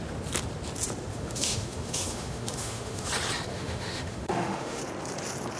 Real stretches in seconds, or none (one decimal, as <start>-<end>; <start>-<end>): 0.0-1.1; 3.1-3.5; 4.8-5.6